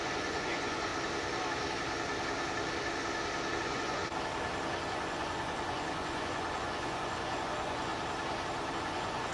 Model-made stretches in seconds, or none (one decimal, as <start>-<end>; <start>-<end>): 0.0-0.9; 3.6-4.0; 4.9-7.9; 8.8-9.3

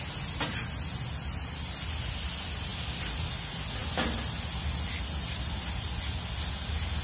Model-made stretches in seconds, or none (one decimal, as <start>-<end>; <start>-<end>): none

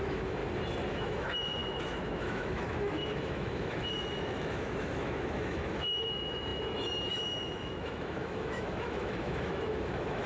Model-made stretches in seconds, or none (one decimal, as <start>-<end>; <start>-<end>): 0.0-0.4; 0.9-10.3

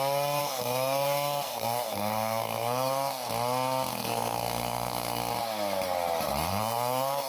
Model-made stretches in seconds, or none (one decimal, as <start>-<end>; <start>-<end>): 0.4-3.3; 3.9-5.2; 6.5-7.3